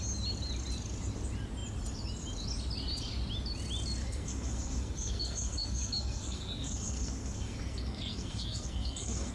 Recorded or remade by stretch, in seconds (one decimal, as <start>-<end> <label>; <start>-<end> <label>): 0.0-4.0 recorded; 4.0-9.3 remade